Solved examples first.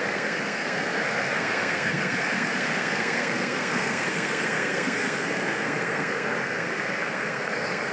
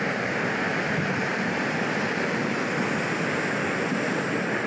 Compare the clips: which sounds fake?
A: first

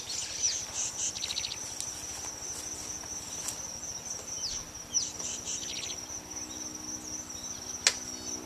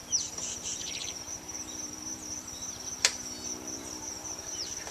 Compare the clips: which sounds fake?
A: second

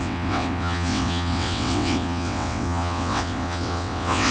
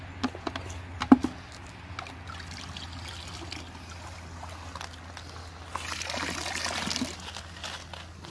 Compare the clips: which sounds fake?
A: first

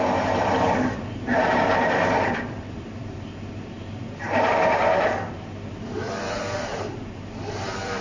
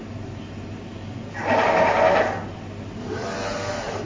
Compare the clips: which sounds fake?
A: first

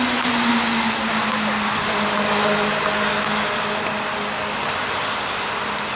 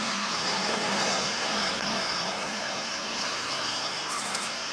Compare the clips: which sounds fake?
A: second